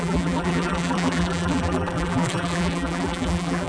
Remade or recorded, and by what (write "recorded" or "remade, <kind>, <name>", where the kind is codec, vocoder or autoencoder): remade, vocoder, BigVGAN v2